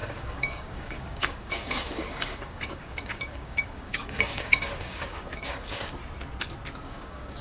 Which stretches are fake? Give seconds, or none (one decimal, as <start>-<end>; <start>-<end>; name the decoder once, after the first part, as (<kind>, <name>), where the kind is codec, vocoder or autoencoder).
0.0-6.0 (codec, DAC); 6.8-7.4